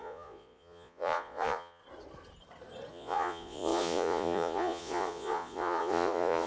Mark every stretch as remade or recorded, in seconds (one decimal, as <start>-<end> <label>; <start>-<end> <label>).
0.0-1.8 remade; 1.8-2.9 recorded; 2.9-6.5 remade